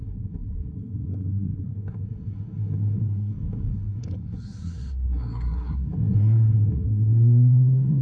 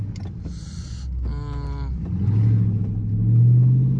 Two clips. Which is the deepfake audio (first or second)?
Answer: first